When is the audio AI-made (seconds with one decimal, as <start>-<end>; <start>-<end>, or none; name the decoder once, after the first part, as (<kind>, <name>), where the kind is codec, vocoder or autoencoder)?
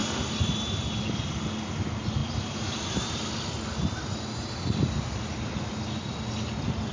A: none